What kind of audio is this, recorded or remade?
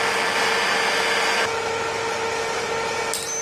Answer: recorded